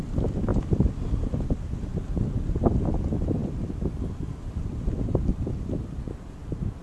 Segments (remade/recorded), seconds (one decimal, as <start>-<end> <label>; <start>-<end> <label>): 0.0-0.5 remade; 0.5-1.1 recorded; 1.1-6.8 remade